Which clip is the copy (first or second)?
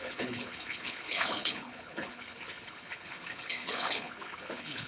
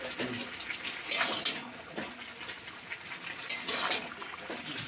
first